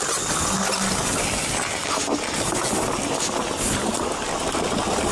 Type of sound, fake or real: real